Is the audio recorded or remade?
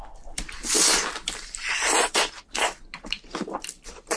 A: remade